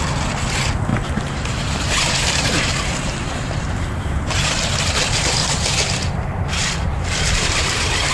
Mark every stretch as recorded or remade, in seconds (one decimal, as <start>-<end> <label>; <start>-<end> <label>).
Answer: 0.0-0.9 recorded; 0.9-4.5 remade; 4.5-5.4 recorded; 5.4-8.1 remade